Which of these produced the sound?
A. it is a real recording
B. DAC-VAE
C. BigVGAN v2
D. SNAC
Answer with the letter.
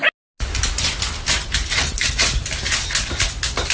A